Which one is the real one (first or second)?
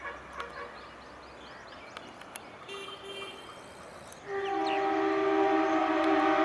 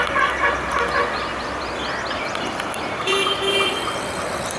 first